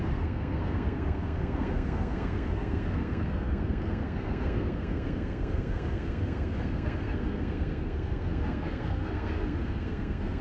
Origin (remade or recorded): remade